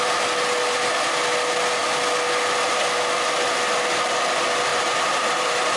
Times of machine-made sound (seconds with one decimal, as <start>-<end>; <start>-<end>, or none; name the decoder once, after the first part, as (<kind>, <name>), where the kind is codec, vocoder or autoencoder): 4.7-5.8 (vocoder, BigVGAN v2)

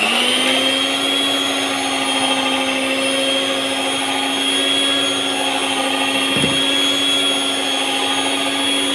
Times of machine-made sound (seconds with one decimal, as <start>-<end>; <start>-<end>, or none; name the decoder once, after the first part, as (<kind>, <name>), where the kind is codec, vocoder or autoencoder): none

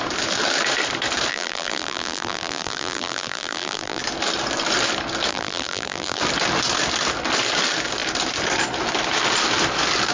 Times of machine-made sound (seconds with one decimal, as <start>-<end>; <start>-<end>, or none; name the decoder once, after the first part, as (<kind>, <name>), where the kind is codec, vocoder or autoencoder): 1.3-4.0 (vocoder, BigVGAN v2); 5.3-6.2

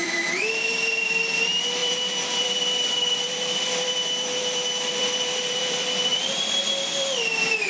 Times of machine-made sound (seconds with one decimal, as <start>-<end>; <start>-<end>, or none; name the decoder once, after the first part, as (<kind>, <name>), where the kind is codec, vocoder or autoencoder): 0.0-6.1 (vocoder, BigVGAN v2); 6.6-7.7

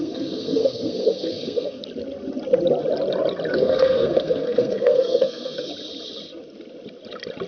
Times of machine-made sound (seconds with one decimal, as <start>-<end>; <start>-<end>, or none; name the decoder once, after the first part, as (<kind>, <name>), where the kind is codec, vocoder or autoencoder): 0.0-1.8 (codec, SNAC); 3.5-5.7

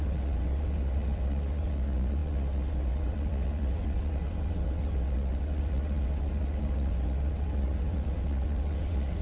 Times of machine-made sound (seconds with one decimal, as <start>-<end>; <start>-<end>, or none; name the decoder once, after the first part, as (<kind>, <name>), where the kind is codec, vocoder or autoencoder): 0.0-9.2 (vocoder, WaveNeXt)